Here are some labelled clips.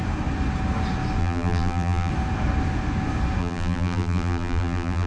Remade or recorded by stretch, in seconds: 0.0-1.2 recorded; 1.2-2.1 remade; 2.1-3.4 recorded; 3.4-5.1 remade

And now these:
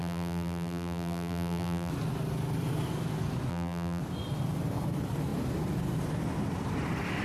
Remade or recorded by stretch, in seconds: 0.0-1.9 remade; 1.9-3.5 recorded; 3.5-4.0 remade; 4.0-7.2 recorded